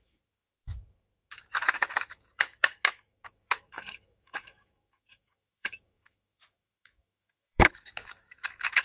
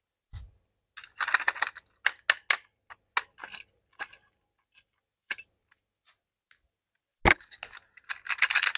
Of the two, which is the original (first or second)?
second